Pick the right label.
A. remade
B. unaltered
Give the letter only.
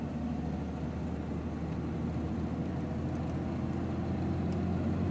B